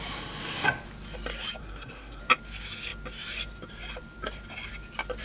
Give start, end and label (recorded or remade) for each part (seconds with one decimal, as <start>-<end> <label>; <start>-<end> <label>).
0.0-1.6 recorded; 1.6-2.2 remade; 2.2-5.2 recorded